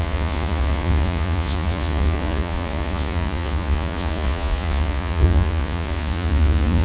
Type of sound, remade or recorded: remade